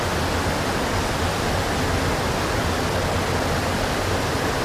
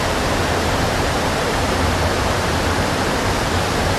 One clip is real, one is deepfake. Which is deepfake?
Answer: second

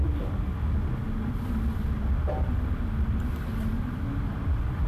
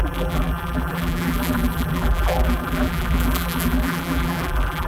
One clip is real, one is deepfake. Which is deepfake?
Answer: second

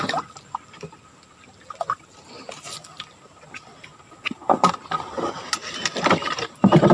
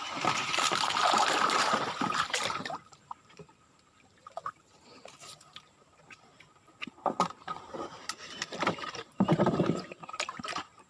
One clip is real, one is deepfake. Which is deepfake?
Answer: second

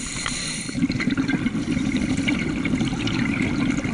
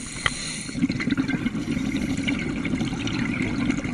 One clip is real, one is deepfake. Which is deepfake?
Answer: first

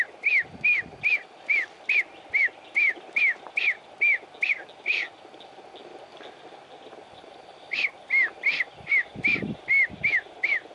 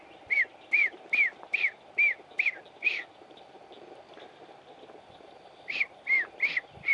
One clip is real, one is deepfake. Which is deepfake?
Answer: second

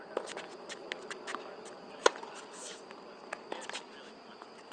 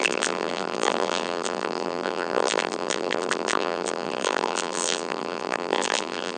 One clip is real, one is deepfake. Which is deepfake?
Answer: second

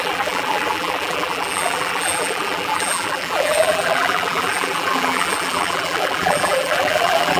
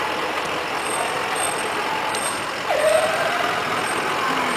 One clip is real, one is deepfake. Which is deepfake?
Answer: first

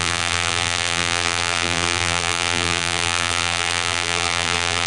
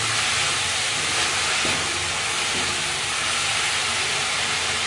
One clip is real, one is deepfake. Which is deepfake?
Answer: first